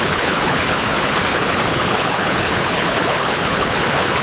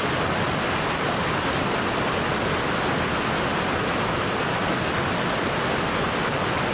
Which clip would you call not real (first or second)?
first